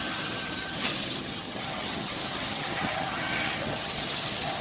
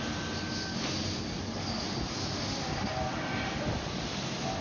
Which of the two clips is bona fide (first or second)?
second